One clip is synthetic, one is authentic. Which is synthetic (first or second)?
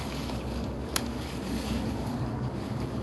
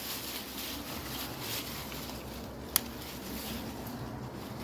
first